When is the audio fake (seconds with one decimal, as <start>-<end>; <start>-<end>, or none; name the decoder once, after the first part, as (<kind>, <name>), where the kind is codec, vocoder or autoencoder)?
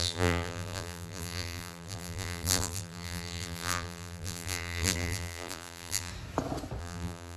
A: 0.0-6.1 (vocoder, BigVGAN v2); 6.8-7.4